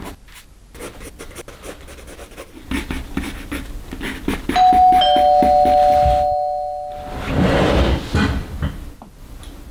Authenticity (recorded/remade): recorded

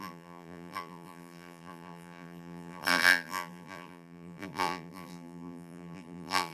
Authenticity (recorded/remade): remade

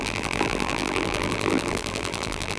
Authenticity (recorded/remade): remade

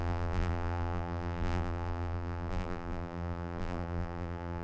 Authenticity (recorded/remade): remade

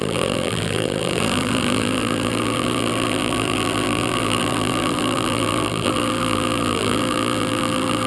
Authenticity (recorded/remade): remade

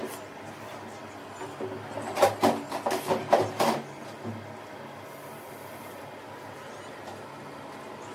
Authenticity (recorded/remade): recorded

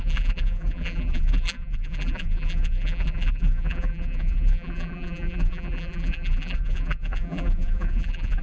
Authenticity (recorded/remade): remade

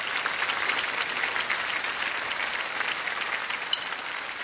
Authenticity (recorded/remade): recorded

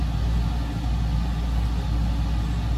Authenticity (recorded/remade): recorded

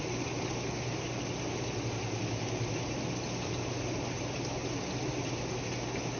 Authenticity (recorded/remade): recorded